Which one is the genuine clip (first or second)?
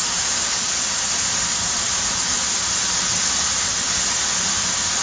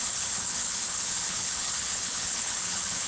first